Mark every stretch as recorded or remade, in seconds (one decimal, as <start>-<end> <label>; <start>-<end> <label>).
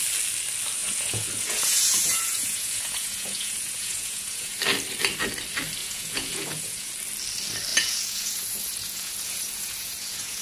0.0-0.8 recorded; 0.8-4.6 remade; 4.6-5.8 recorded; 5.8-6.9 remade; 6.9-7.7 recorded; 7.7-10.4 remade